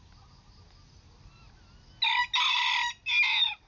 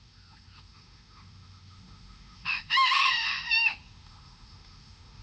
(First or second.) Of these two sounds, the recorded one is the first